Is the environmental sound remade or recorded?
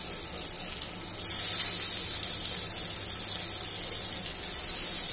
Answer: recorded